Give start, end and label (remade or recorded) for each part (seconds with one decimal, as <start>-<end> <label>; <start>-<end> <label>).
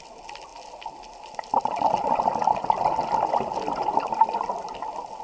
0.0-5.2 recorded